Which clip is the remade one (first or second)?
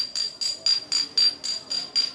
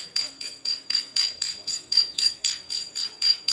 second